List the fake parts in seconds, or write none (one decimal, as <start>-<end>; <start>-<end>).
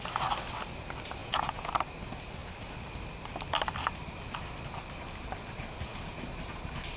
1.2-1.7